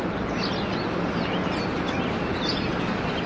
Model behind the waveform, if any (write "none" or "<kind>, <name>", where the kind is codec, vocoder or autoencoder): none